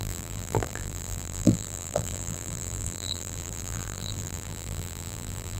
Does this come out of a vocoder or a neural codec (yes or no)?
yes